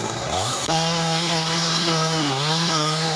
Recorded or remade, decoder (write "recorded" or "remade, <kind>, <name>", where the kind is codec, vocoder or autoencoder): remade, codec, SNAC